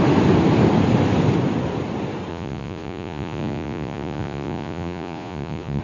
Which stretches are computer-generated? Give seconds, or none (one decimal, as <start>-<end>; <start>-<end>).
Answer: 2.3-5.8